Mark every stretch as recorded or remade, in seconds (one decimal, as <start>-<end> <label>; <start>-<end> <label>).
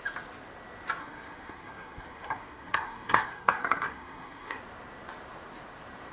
0.0-1.0 recorded; 1.0-4.6 remade; 4.6-6.1 recorded